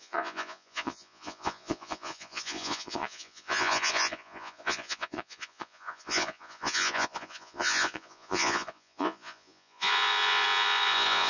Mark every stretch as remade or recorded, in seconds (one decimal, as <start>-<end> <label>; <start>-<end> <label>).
0.0-11.3 remade